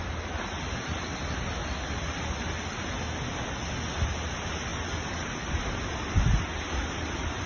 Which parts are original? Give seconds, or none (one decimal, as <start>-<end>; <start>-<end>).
0.0-7.5